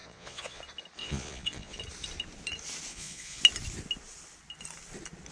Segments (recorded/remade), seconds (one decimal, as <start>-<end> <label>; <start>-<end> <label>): 0.0-0.6 remade; 0.6-1.0 recorded; 1.0-1.8 remade; 1.8-2.9 recorded; 2.9-3.4 remade; 3.4-5.3 recorded